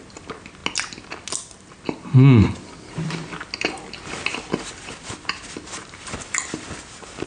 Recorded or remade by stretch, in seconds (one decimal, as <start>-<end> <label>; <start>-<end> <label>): 0.0-7.3 recorded